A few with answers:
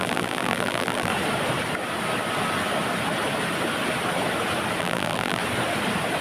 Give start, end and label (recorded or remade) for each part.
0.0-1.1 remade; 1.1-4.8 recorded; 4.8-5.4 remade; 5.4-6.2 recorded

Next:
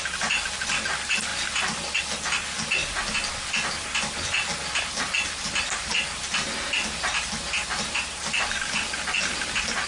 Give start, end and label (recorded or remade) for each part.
0.0-9.9 recorded